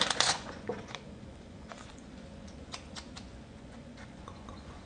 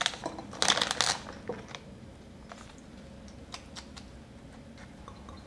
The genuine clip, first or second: second